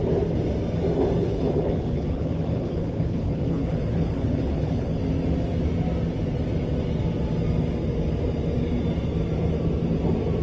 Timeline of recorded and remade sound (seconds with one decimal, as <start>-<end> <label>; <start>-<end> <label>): 0.0-1.2 recorded; 1.2-5.0 remade; 5.0-10.4 recorded